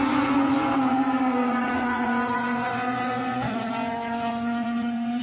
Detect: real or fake fake